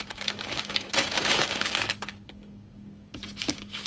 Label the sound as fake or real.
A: fake